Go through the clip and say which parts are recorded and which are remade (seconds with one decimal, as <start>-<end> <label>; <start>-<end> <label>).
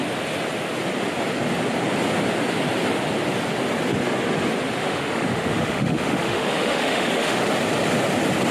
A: 0.0-4.8 recorded; 4.8-7.5 remade; 7.5-8.5 recorded